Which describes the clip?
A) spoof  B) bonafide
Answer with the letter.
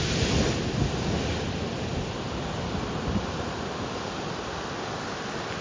B